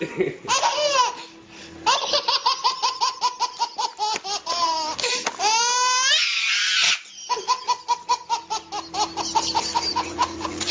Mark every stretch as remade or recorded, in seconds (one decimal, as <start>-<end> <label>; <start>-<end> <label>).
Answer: 0.0-6.2 recorded; 6.2-7.1 remade; 7.1-9.9 recorded; 9.9-10.7 remade